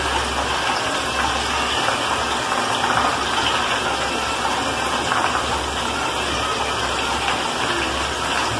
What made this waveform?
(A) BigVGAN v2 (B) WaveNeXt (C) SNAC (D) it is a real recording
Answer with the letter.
D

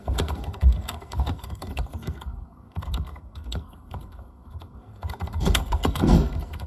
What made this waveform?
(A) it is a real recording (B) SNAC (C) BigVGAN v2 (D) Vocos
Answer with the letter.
B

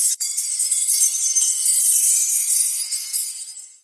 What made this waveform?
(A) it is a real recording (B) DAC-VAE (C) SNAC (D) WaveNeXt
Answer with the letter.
C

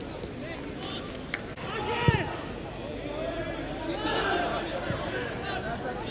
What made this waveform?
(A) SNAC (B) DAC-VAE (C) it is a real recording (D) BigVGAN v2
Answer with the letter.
C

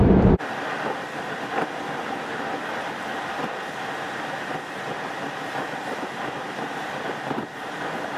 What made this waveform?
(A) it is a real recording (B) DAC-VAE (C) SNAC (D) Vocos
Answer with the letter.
A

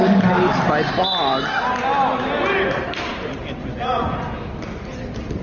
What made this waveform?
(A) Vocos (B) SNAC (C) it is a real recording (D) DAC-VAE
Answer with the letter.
C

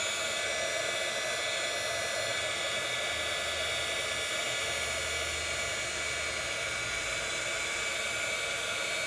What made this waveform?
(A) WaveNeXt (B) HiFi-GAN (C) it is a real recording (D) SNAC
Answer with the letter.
C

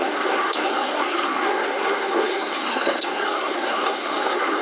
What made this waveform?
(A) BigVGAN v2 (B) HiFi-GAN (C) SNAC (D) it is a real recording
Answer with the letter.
C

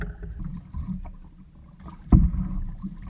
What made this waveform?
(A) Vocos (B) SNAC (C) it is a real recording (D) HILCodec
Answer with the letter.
C